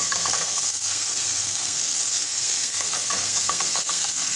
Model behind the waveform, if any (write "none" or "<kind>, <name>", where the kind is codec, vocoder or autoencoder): codec, SNAC